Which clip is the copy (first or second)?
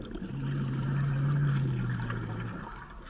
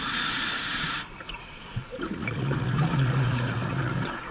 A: second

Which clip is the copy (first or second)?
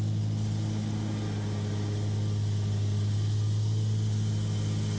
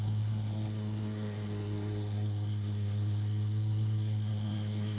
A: second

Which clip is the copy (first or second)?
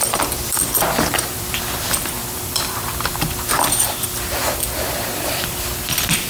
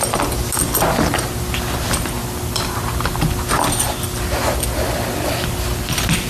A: first